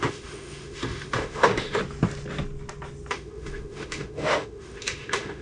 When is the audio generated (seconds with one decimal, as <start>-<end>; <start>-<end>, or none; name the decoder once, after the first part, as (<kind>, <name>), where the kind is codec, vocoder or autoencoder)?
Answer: 0.0-1.8 (autoencoder, DAC-VAE); 3.1-5.4